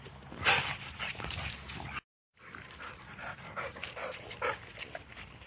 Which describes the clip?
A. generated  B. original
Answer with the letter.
B